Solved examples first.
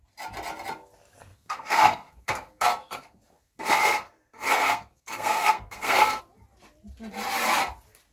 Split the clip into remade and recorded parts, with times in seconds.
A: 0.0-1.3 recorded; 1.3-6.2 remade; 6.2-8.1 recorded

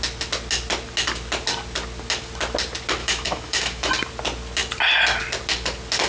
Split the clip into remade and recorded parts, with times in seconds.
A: 0.0-3.0 recorded; 3.0-3.9 remade; 3.9-6.1 recorded

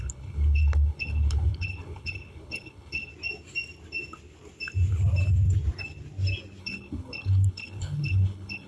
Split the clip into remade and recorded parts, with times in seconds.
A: 0.0-3.1 remade; 3.1-6.6 recorded; 6.6-8.7 remade

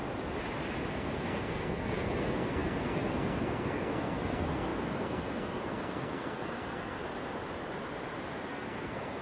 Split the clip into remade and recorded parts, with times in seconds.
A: 0.0-0.9 recorded; 0.9-7.0 remade; 7.0-8.5 recorded; 8.5-9.2 remade